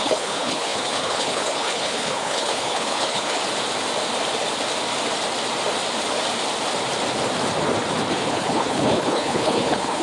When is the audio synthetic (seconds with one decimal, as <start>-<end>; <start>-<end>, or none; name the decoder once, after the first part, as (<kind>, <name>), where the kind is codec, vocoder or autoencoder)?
0.0-3.4 (codec, HILCodec); 8.1-10.0